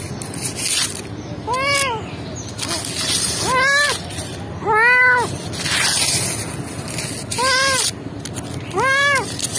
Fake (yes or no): no